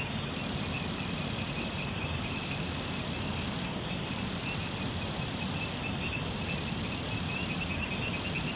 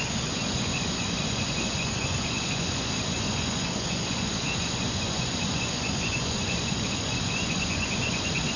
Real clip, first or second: first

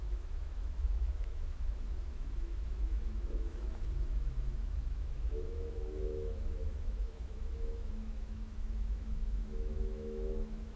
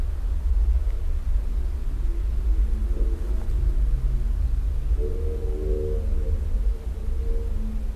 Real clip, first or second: second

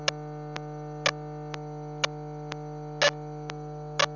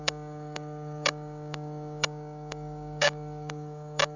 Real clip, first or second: first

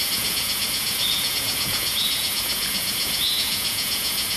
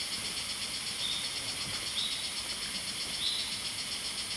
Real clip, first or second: second